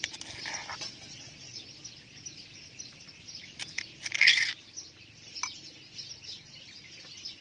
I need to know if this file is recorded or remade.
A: recorded